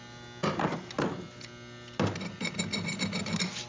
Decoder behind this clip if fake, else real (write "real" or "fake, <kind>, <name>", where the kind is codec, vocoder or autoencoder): real